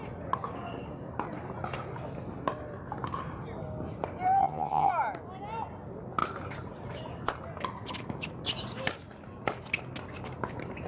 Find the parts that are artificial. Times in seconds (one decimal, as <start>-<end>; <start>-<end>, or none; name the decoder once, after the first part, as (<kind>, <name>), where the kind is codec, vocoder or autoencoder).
4.4-4.9 (vocoder, HiFi-GAN)